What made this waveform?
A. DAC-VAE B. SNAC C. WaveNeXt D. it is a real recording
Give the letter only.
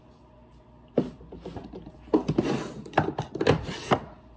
D